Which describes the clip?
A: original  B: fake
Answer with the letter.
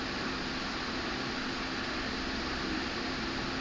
A